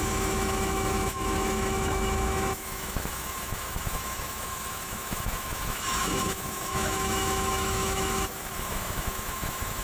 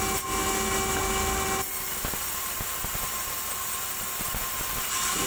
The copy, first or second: first